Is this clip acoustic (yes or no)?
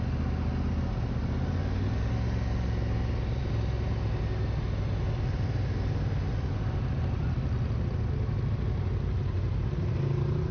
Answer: yes